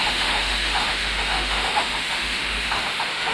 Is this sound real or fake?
fake